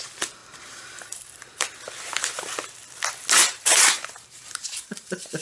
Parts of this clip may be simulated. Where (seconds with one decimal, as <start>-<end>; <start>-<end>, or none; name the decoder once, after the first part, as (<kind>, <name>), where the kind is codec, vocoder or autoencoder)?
0.4-1.7 (vocoder, BigVGAN v2); 3.4-5.4